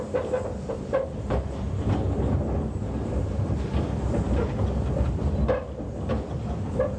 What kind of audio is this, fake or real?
real